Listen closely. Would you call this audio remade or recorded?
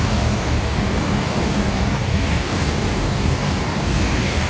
remade